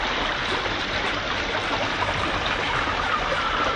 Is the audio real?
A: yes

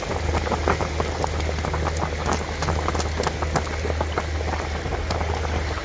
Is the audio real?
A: yes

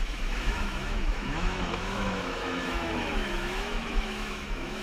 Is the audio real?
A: no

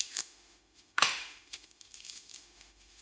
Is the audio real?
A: no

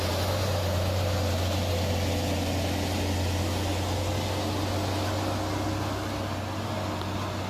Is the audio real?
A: yes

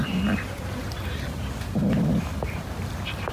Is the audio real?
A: yes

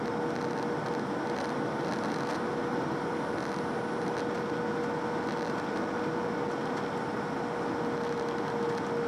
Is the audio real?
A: yes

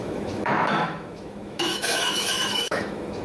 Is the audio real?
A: no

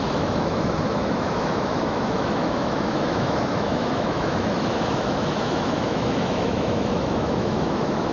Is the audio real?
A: no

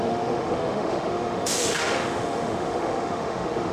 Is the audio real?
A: no